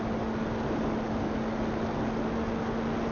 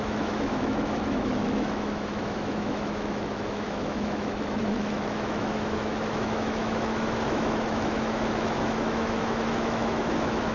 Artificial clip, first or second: second